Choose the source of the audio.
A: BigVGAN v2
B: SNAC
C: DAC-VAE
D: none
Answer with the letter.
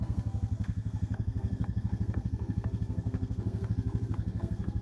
B